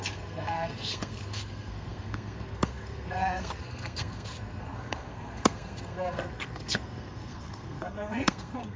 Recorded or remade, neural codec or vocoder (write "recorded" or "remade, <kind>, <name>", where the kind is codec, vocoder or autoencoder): remade, codec, SNAC